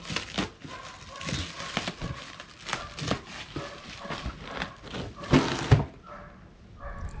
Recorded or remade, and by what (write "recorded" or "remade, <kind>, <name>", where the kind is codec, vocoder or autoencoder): recorded